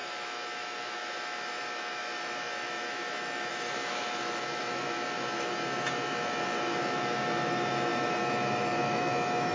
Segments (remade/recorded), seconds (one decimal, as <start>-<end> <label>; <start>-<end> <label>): 0.0-9.5 remade